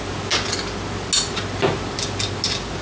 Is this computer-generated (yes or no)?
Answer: no